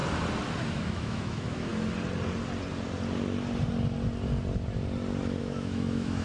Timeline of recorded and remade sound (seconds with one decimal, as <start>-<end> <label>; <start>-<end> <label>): 0.0-0.7 recorded; 0.7-1.7 remade; 1.7-5.4 recorded; 5.4-6.2 remade